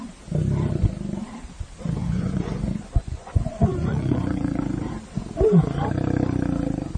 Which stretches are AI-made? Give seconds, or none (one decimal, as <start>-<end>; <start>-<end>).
2.0-4.9